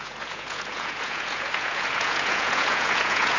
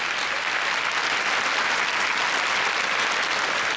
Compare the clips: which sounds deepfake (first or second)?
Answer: first